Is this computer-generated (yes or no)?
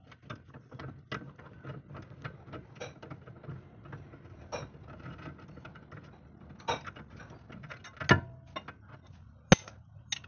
no